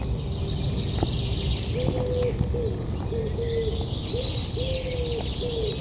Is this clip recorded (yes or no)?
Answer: yes